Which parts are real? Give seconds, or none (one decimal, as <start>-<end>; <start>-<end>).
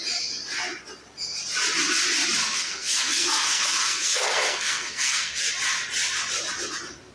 0.0-2.4; 5.5-7.1